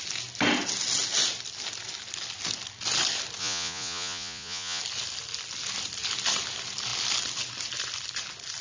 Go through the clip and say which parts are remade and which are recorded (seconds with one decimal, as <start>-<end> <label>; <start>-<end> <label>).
0.0-3.4 recorded; 3.4-4.8 remade; 4.8-8.6 recorded